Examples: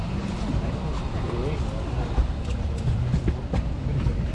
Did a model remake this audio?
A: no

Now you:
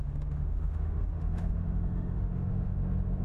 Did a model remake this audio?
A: yes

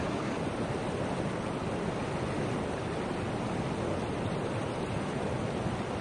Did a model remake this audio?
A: no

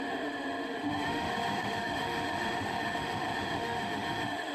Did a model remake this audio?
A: yes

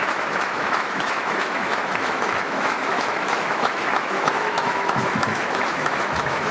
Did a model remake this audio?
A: yes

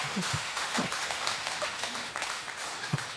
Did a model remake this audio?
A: yes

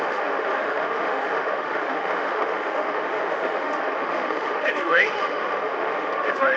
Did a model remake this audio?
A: yes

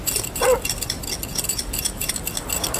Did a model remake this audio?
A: no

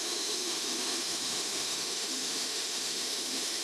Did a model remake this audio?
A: yes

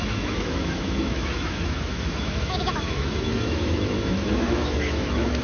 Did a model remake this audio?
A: yes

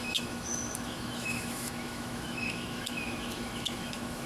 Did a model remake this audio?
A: yes